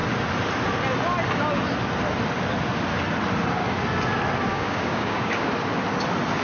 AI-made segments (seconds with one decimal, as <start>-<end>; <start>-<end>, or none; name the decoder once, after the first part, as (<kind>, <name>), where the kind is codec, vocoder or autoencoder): 4.5-5.5 (codec, DAC)